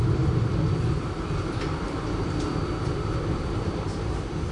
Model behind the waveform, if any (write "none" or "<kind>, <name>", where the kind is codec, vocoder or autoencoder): vocoder, BigVGAN v2